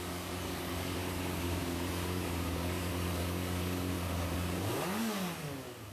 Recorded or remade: remade